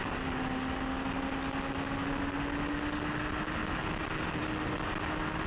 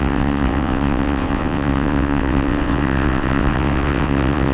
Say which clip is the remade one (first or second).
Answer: second